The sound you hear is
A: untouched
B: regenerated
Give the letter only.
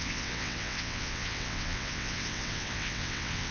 B